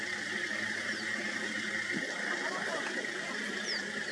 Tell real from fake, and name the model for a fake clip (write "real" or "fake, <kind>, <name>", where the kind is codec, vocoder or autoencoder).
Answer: real